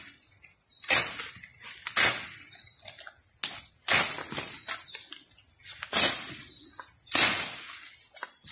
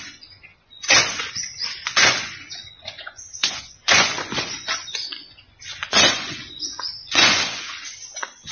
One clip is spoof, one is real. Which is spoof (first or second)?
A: second